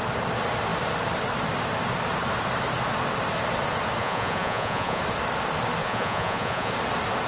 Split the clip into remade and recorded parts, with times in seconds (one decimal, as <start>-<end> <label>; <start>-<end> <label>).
0.0-4.0 recorded; 4.0-5.0 remade; 5.0-5.8 recorded; 5.8-6.7 remade; 6.7-7.3 recorded